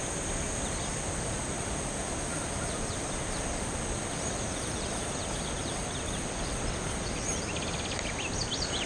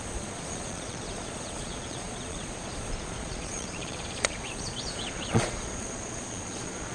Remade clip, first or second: second